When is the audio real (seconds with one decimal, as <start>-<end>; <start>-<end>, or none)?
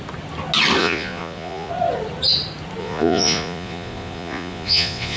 0.0-0.8; 1.7-2.8